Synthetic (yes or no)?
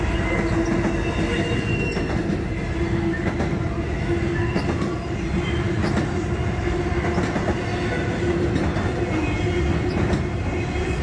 no